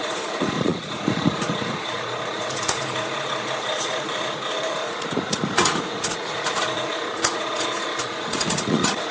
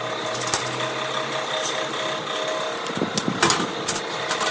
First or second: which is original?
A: second